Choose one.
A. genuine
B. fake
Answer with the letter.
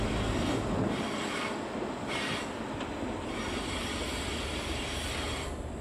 A